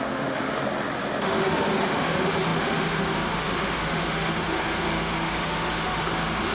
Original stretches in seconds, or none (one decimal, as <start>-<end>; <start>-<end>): 0.6-1.2